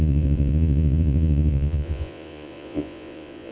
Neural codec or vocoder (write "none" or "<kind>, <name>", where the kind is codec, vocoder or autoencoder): vocoder, Vocos